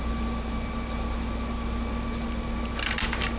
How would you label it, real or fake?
real